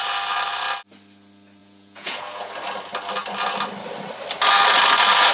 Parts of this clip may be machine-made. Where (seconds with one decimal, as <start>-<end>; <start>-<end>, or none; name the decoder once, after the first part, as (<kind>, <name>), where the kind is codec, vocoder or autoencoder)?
1.6-2.5 (vocoder, Vocos)